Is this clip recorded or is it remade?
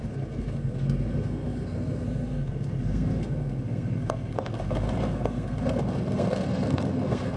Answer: remade